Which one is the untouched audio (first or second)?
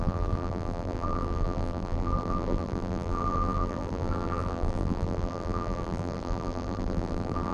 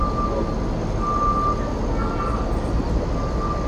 second